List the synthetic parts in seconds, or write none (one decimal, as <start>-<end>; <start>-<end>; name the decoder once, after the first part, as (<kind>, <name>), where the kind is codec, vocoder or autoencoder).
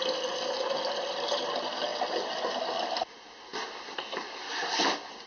none